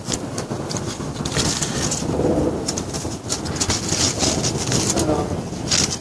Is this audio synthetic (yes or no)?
no